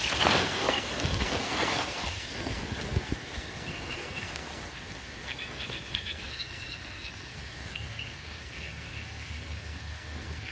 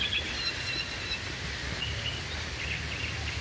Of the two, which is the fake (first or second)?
first